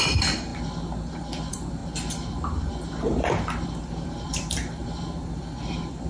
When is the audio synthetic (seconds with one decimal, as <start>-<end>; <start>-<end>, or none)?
0.0-0.5; 1.1-6.1